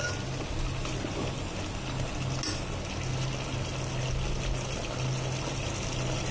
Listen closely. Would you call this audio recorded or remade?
recorded